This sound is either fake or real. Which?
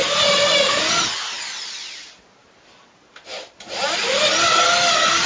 real